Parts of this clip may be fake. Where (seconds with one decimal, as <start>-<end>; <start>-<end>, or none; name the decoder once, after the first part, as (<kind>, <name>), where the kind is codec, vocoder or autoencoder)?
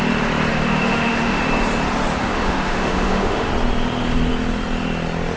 0.5-1.4 (autoencoder, DAC-VAE); 2.2-3.5